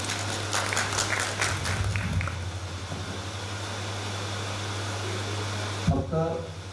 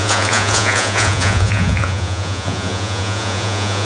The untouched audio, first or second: first